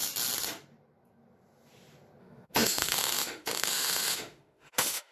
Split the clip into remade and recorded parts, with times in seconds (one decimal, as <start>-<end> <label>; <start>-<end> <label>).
0.0-2.2 recorded; 2.2-5.1 remade